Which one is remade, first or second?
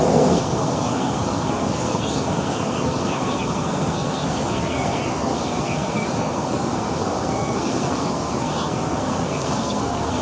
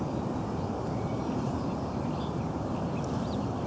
first